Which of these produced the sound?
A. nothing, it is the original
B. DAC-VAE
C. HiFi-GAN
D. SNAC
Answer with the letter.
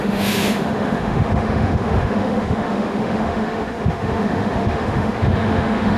B